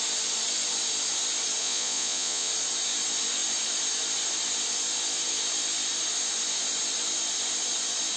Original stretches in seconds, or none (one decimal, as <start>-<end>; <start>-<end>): 0.0-1.6; 2.5-8.2

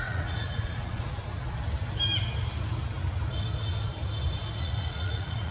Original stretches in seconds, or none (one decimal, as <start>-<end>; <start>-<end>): 1.2-4.5

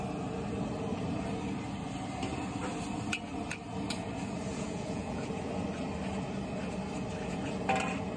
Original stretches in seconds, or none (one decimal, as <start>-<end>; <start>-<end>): 0.0-4.5; 5.3-8.2

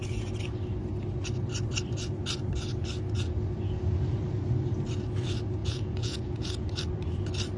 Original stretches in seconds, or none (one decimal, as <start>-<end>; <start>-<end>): 0.0-5.6; 6.7-7.6

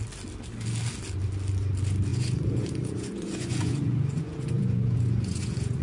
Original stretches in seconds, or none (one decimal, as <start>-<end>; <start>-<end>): 0.0-2.1

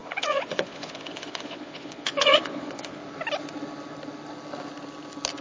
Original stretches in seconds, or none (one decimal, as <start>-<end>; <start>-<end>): 3.0-5.4

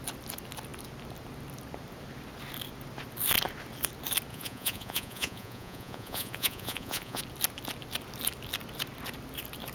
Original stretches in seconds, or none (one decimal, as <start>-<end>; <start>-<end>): 0.0-4.3; 7.2-9.7

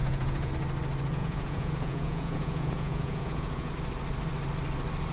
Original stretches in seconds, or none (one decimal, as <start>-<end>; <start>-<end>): 0.5-1.2; 3.7-5.1